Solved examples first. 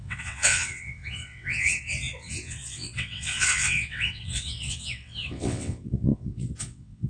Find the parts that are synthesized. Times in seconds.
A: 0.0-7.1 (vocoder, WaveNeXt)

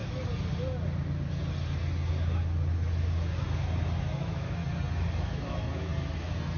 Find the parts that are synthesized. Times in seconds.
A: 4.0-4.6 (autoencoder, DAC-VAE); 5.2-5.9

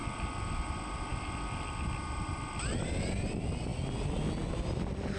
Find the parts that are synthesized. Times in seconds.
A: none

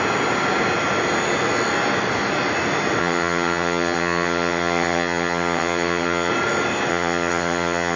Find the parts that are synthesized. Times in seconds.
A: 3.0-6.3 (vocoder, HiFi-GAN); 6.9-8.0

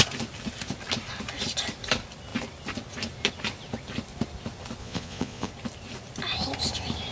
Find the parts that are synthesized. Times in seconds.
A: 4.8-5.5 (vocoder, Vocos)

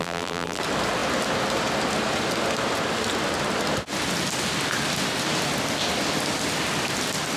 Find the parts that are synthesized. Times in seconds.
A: 0.0-0.6 (vocoder, BigVGAN v2)

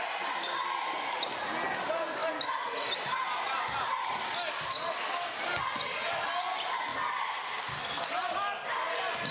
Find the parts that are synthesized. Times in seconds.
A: none